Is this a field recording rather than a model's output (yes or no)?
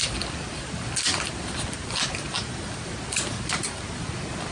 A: yes